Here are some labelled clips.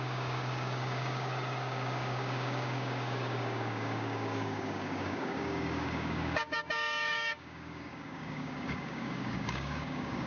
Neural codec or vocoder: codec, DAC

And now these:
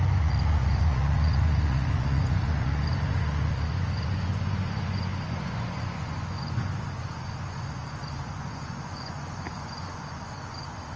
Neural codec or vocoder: vocoder, Vocos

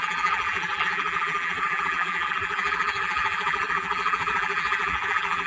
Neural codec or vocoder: vocoder, BigVGAN v2